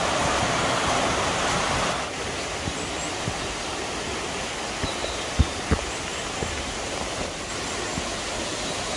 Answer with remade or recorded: recorded